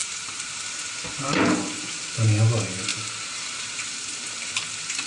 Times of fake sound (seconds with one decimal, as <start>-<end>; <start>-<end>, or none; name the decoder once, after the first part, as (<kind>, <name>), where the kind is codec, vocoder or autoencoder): 0.0-0.5 (vocoder, BigVGAN v2); 2.9-3.8